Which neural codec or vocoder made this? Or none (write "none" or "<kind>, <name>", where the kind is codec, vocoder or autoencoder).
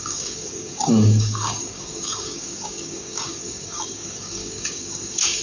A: codec, DAC